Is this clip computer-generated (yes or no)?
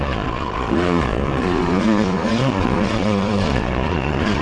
yes